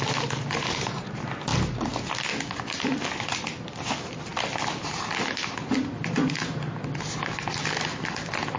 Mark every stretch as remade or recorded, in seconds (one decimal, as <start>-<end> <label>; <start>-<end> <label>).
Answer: 0.0-8.6 recorded